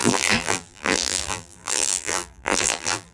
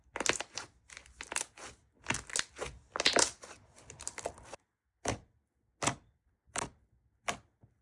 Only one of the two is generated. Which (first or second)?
first